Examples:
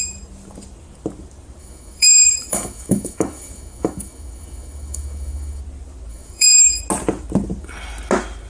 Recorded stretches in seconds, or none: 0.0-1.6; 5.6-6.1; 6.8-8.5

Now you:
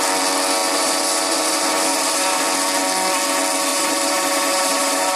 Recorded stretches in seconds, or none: 0.0-0.6; 2.4-3.7

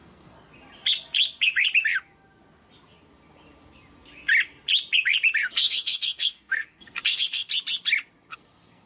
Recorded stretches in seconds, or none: 0.5-5.4; 7.5-8.3

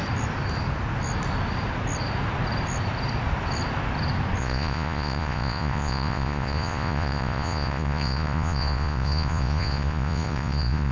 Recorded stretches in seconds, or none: 0.0-4.4

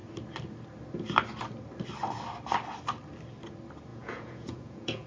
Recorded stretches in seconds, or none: 0.0-3.9

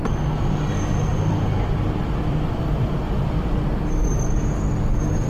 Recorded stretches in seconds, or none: 0.0-1.1; 4.3-5.3

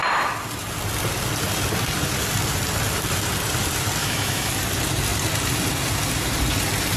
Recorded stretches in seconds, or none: 0.0-4.0; 4.5-7.0

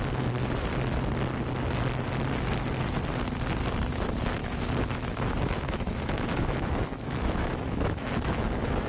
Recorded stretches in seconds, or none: 0.0-4.4